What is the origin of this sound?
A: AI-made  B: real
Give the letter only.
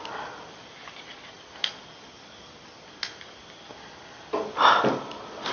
B